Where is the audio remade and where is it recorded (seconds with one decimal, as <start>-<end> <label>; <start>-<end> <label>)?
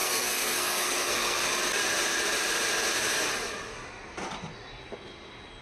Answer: 0.0-1.4 remade; 1.4-5.6 recorded